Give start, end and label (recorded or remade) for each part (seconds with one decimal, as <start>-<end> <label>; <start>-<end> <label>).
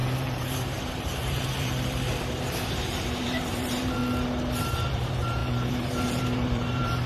0.0-4.0 remade; 4.0-4.6 recorded; 4.6-7.1 remade